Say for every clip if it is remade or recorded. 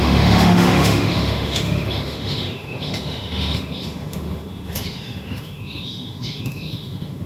remade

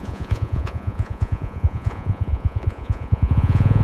remade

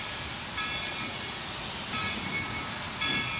recorded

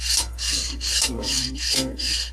remade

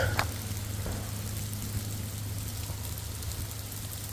recorded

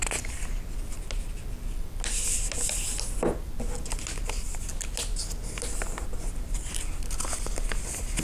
recorded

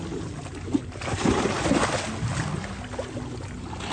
recorded